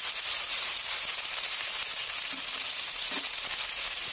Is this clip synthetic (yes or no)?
yes